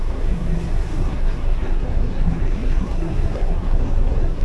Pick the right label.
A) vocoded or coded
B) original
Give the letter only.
A